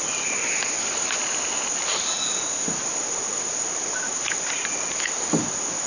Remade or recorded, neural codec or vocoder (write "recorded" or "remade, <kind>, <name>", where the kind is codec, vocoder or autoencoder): recorded